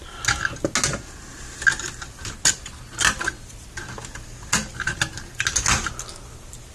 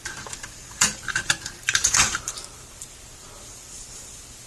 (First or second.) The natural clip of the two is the first